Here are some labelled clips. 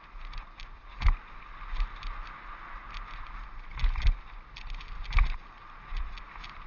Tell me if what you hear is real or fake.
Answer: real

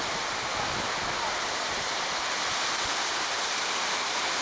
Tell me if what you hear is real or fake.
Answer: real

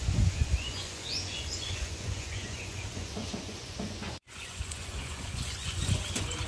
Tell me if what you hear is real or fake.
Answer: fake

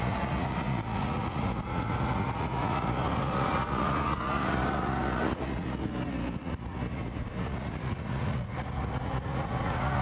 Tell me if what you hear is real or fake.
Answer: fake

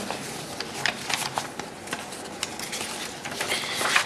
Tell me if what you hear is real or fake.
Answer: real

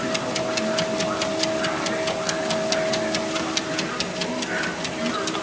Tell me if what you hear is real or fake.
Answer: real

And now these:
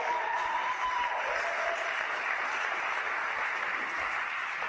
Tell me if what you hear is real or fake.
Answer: real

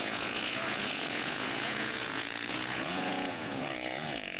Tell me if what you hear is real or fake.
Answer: fake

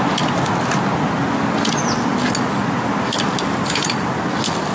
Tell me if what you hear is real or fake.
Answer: real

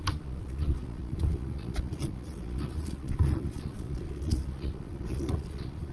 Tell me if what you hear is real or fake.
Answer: fake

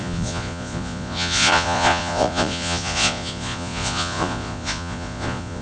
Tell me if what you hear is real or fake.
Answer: fake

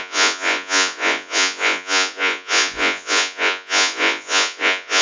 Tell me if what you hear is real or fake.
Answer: fake